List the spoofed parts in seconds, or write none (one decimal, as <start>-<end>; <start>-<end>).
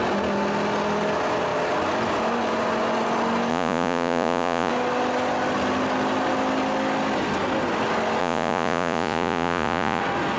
3.5-4.7; 8.2-10.0